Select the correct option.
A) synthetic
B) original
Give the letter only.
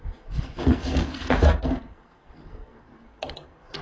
A